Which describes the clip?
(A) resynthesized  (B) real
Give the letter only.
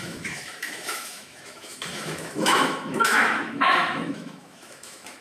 A